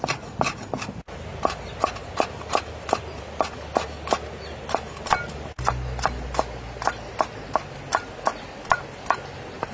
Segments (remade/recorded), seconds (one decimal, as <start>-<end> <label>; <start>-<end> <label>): 0.0-9.7 recorded

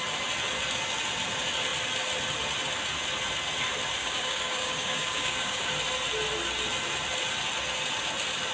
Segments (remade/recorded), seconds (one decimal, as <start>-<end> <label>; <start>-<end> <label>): 0.0-4.0 recorded; 4.0-5.7 remade; 5.7-8.5 recorded

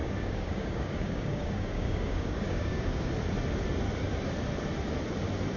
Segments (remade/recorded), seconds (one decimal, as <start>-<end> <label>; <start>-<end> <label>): 0.0-3.1 remade; 3.1-5.6 recorded

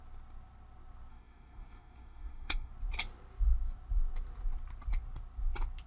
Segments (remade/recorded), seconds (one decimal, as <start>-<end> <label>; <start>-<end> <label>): 0.0-1.1 recorded; 1.1-2.7 remade; 2.7-5.9 recorded